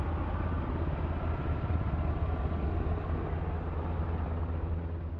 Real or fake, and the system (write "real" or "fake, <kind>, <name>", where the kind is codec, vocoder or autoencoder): real